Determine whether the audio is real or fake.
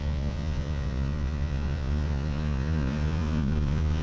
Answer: fake